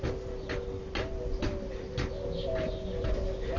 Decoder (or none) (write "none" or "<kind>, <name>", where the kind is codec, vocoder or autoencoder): none